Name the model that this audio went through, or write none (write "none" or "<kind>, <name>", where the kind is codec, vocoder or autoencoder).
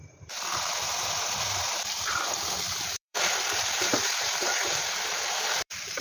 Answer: vocoder, BigVGAN v2